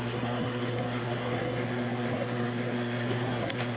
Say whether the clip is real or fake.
fake